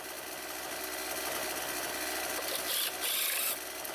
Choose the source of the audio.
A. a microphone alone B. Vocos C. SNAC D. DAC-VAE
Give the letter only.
A